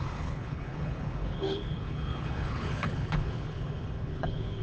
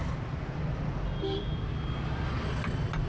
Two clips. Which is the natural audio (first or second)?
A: second